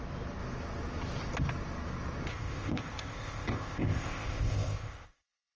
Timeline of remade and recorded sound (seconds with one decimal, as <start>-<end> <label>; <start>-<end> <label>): 0.0-2.3 recorded; 2.3-5.6 remade